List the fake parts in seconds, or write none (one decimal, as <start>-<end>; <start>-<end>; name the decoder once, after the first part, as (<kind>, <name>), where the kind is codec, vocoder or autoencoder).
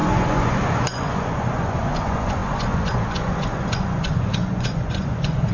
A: 0.0-5.5 (vocoder, Vocos)